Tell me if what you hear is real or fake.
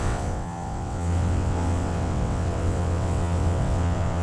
fake